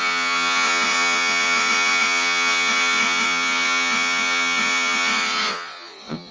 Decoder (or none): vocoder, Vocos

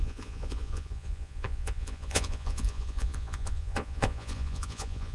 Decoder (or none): vocoder, Vocos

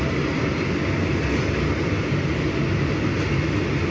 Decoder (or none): none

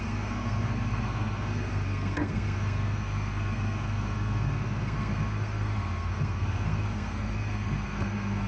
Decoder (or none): codec, SNAC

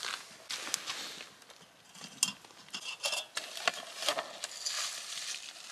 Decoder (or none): none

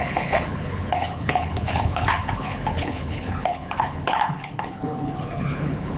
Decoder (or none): codec, HILCodec